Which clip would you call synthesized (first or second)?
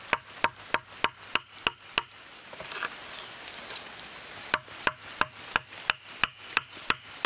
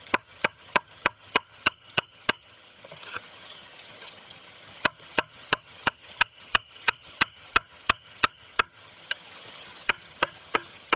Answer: second